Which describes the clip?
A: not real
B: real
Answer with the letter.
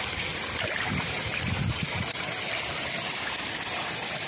B